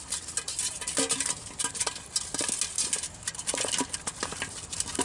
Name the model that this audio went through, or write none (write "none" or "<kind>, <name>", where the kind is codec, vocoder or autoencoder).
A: none